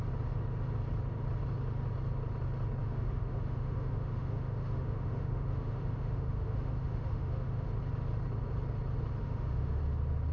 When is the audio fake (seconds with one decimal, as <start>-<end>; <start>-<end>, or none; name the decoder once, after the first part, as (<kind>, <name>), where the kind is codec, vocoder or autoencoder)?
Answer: 2.8-7.7 (autoencoder, DAC-VAE); 9.2-9.8